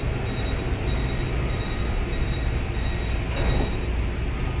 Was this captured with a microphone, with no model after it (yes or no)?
yes